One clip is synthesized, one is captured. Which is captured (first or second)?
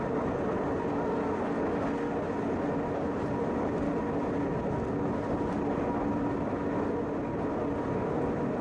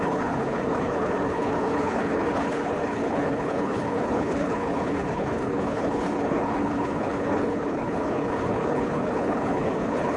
first